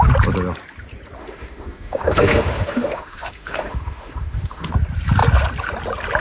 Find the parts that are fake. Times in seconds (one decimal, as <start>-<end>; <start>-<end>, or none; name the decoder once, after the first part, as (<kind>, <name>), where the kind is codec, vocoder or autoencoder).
1.2-4.7 (autoencoder, DAC-VAE)